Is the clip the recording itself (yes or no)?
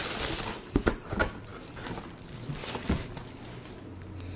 yes